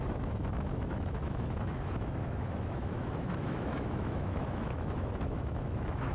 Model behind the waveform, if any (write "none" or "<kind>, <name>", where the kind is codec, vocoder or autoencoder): autoencoder, DAC-VAE